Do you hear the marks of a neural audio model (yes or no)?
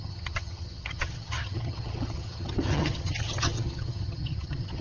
yes